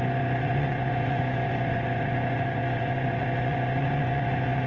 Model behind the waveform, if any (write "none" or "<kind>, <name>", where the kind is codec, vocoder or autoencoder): vocoder, Vocos